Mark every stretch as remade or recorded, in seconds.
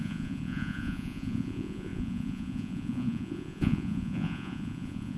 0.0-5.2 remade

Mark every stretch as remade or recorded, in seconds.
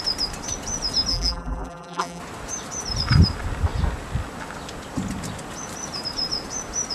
0.0-1.1 recorded; 1.1-2.2 remade; 2.2-6.9 recorded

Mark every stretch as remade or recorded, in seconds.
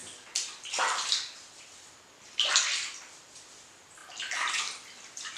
0.0-4.0 remade; 4.0-4.6 recorded; 4.6-5.4 remade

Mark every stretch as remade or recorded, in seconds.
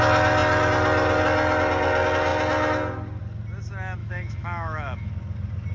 0.0-4.0 recorded; 4.0-5.1 remade; 5.1-5.7 recorded